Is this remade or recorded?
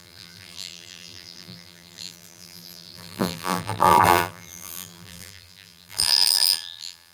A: remade